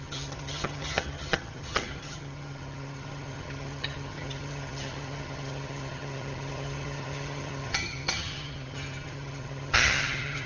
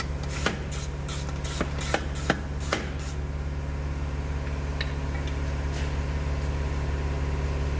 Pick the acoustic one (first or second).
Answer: second